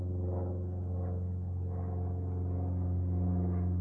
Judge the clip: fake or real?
real